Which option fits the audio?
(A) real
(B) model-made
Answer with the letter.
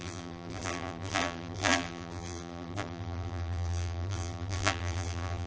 B